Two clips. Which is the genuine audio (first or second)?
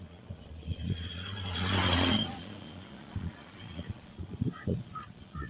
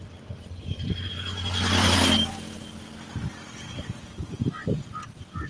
second